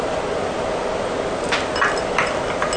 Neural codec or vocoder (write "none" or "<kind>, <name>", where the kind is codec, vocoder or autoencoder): none